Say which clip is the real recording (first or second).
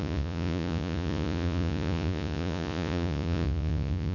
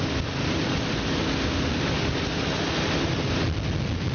second